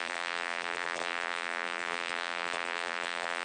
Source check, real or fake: fake